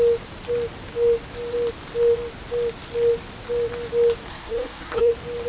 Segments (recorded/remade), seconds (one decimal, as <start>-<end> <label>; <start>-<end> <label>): 0.0-4.3 recorded; 4.3-5.1 remade; 5.1-5.5 recorded